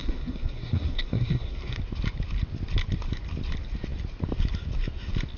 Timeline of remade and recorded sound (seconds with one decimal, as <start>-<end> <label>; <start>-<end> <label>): 0.0-1.8 remade; 1.8-5.4 recorded